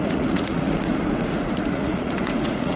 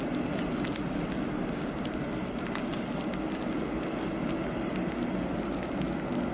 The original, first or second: second